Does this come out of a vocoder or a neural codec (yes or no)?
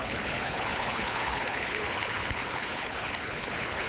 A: yes